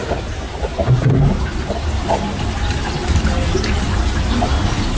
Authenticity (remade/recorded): recorded